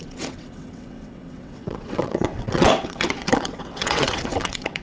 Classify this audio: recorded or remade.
remade